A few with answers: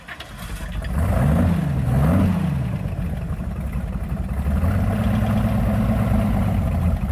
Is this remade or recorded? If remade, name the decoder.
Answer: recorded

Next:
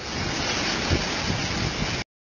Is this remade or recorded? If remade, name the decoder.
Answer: recorded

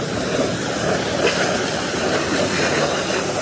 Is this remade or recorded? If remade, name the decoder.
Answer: recorded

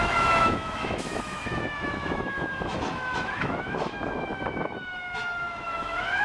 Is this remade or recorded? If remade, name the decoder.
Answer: remade, autoencoder, DAC-VAE